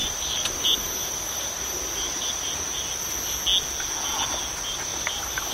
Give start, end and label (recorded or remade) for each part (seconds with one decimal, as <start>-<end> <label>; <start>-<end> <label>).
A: 0.0-2.8 remade; 2.8-4.9 recorded; 4.9-5.5 remade